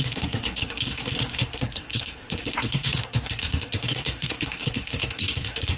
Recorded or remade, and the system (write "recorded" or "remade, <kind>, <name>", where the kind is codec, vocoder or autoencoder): remade, codec, SNAC